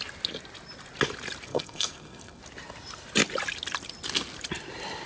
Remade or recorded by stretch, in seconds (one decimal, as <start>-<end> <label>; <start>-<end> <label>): 0.0-1.5 recorded; 1.5-2.4 remade; 2.4-5.1 recorded